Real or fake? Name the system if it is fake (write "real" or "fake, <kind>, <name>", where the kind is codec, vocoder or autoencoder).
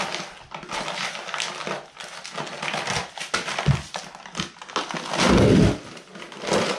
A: real